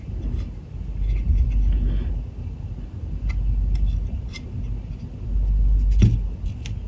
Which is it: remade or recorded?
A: recorded